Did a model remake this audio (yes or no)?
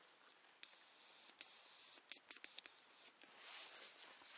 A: no